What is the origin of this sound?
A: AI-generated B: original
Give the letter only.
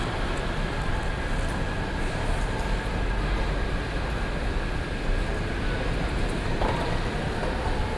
B